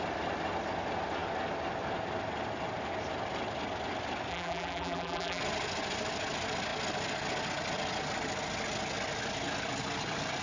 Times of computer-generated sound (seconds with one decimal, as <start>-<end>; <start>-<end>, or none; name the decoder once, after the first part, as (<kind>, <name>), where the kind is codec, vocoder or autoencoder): 4.3-5.4 (vocoder, BigVGAN v2)